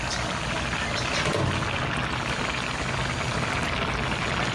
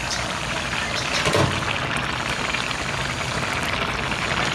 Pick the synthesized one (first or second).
second